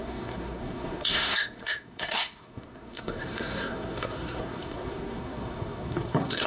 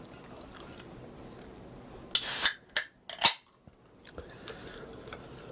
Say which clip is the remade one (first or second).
first